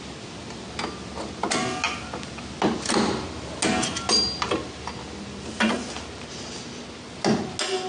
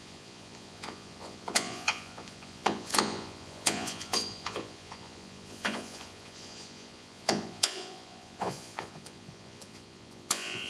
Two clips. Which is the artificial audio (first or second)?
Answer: second